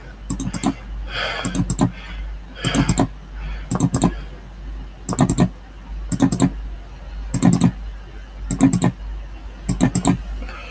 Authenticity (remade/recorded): recorded